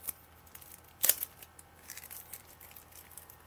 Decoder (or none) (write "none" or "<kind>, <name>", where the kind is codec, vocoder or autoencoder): vocoder, BigVGAN v2